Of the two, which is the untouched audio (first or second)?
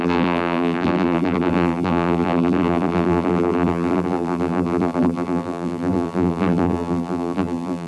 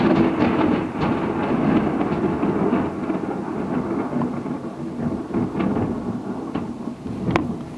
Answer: second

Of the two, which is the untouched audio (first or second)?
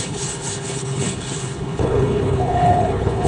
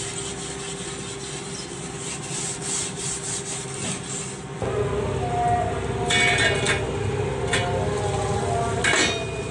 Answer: second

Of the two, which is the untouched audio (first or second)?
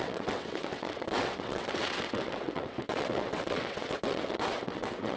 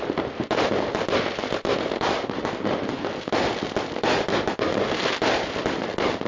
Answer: second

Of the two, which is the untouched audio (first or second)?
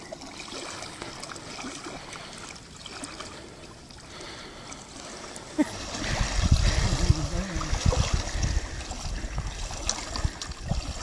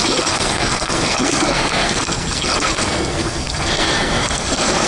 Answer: first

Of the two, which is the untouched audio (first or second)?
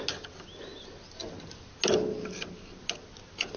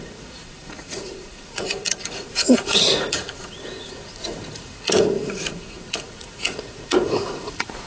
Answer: first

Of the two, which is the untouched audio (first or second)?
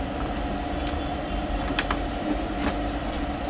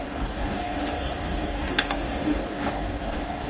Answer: first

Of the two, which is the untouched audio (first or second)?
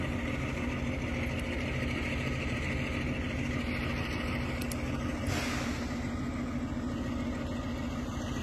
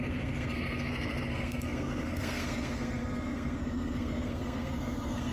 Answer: first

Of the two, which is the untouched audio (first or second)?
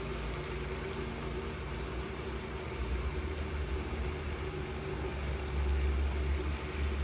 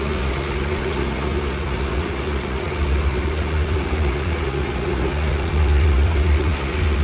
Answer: first